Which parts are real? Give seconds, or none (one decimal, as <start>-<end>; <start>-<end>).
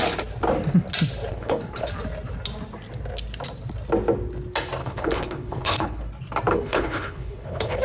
0.0-1.3; 1.9-4.8; 6.0-6.5